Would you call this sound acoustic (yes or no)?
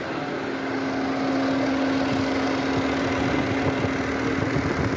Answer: yes